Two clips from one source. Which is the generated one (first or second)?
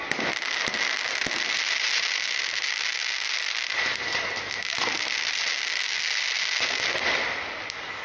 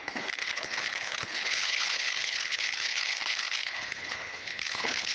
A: second